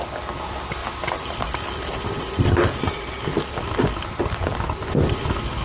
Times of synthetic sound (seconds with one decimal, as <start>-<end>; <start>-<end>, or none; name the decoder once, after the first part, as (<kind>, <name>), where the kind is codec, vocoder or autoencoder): none